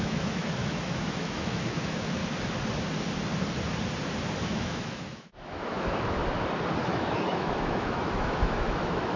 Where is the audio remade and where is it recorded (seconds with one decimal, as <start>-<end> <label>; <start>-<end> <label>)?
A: 0.0-2.2 remade; 2.2-4.4 recorded; 4.4-6.2 remade; 6.2-6.8 recorded; 6.8-9.2 remade